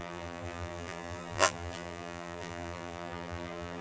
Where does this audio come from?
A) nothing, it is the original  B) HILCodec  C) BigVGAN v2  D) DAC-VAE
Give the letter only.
C